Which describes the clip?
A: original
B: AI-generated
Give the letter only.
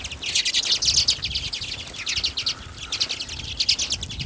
A